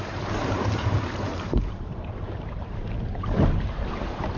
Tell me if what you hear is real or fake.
fake